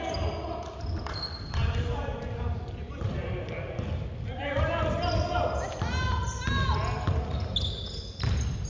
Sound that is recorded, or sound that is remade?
recorded